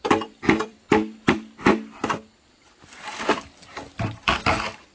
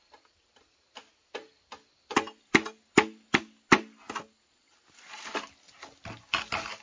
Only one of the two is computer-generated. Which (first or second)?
first